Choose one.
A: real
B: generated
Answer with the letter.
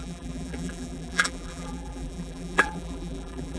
B